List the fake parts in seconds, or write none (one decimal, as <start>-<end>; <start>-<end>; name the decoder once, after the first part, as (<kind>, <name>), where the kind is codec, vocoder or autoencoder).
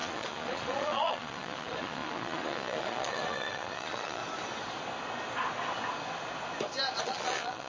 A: 0.0-4.2 (vocoder, Vocos); 7.0-7.7